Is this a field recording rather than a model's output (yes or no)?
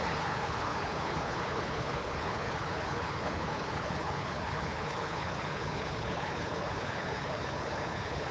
no